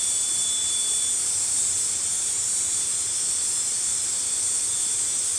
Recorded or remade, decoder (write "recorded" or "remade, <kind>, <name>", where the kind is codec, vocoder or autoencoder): remade, vocoder, BigVGAN v2